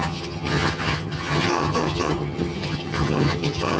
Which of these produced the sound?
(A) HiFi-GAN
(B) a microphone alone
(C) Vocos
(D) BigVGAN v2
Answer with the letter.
A